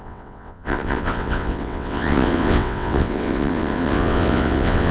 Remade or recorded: remade